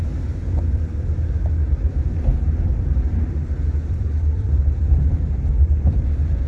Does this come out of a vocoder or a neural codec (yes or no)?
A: yes